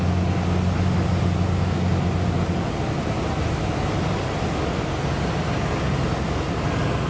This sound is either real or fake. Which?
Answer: real